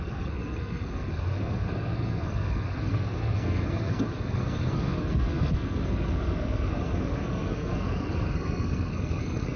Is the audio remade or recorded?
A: remade